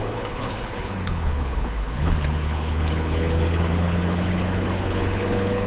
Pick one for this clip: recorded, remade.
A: remade